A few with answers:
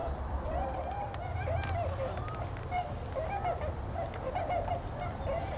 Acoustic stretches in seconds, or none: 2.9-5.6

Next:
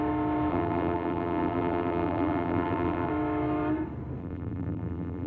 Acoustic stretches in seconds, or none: 0.0-0.5; 3.1-4.2

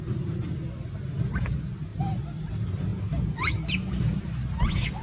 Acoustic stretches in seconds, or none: 0.0-1.9; 2.5-2.9; 4.3-5.0

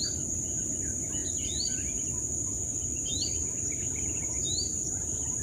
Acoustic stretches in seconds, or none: 1.2-4.4